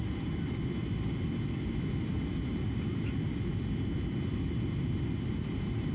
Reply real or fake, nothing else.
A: real